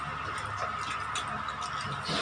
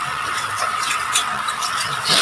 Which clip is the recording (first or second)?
first